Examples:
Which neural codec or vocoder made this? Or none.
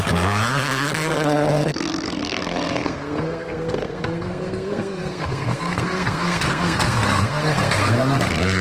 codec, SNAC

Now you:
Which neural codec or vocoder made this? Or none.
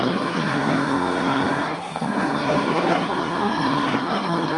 codec, SNAC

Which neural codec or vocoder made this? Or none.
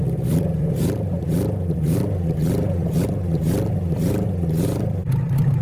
none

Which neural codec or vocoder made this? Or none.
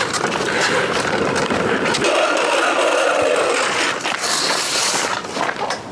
none